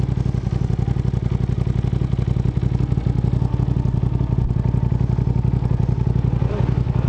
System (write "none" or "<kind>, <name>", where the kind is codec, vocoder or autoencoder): none